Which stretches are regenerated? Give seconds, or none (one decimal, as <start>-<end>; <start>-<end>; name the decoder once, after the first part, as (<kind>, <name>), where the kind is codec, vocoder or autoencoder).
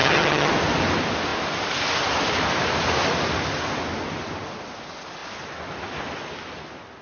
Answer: 0.0-0.5 (vocoder, HiFi-GAN)